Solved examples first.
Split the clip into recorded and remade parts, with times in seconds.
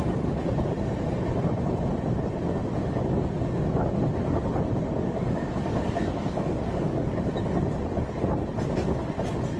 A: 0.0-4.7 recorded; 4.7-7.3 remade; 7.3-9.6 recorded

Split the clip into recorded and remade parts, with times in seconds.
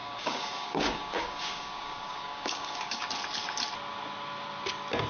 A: 0.0-3.1 remade; 3.1-5.1 recorded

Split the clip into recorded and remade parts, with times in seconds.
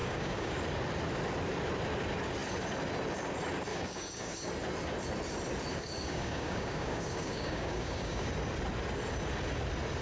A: 0.0-0.5 remade; 0.5-3.7 recorded; 3.7-4.5 remade; 4.5-5.7 recorded; 5.7-8.3 remade; 8.3-10.0 recorded